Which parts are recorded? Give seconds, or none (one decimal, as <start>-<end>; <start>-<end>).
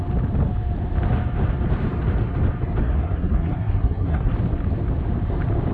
0.0-2.8; 4.3-5.7